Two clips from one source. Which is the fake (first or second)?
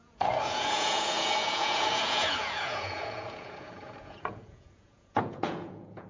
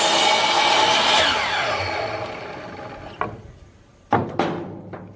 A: first